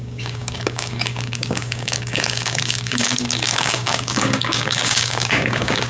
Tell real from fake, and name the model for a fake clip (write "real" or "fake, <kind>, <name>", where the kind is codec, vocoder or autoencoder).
fake, codec, DAC